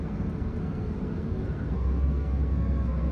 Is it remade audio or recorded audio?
remade